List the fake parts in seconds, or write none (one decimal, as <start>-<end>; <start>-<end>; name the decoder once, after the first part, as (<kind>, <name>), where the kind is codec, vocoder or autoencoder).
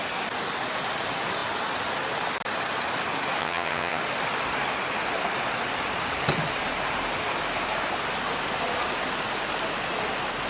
3.4-4.0 (vocoder, HiFi-GAN)